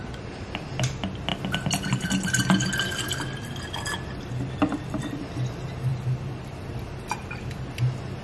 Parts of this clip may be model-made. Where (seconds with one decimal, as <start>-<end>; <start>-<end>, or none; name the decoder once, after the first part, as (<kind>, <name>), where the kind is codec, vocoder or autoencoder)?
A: none